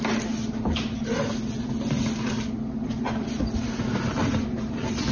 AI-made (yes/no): no